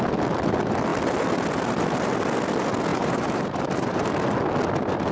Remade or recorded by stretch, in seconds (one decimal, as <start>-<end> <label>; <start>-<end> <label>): 0.0-2.9 recorded; 2.9-4.1 remade; 4.1-5.1 recorded